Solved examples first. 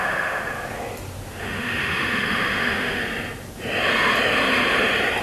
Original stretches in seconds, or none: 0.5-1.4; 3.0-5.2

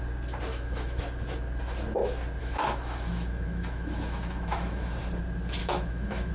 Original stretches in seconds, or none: 0.0-0.5; 1.0-2.4; 5.0-5.6